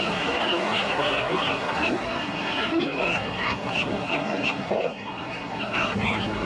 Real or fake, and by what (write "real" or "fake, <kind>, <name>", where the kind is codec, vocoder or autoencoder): fake, codec, SNAC